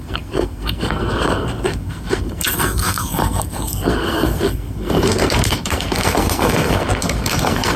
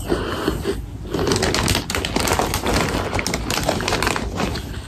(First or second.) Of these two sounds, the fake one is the first